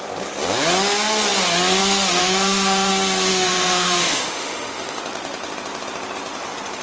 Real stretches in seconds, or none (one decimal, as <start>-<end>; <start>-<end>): 0.0-2.2; 2.9-3.3; 5.0-6.8